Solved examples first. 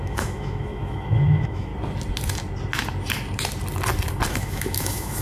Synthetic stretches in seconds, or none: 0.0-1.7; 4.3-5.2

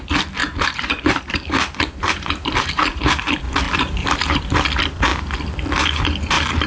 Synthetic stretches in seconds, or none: 0.4-4.4

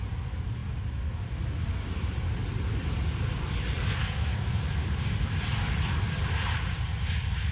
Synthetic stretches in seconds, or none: 4.0-4.6

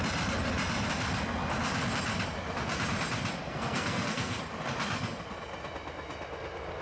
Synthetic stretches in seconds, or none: 3.4-4.4

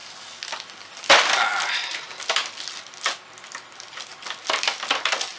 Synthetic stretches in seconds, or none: none

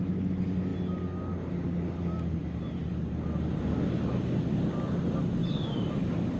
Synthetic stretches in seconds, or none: 2.8-4.2; 5.4-5.9

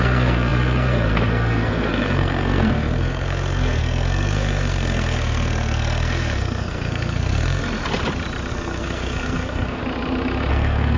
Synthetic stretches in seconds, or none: 0.0-7.6; 8.5-9.8; 10.5-11.0